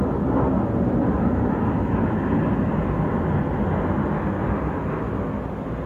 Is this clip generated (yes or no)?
no